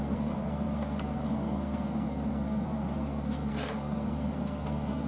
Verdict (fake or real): fake